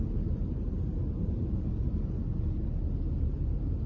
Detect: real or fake real